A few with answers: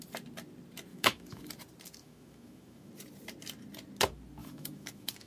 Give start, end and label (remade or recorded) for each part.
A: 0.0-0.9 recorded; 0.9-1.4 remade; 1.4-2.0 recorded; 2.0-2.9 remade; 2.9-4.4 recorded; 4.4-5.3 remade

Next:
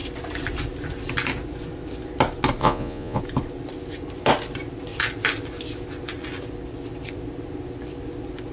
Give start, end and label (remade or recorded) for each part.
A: 0.0-2.6 recorded; 2.6-3.2 remade; 3.2-8.5 recorded